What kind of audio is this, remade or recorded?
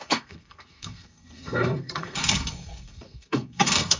remade